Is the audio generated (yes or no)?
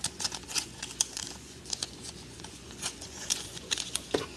yes